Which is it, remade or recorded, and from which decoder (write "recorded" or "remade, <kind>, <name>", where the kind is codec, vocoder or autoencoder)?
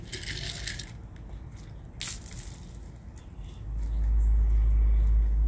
recorded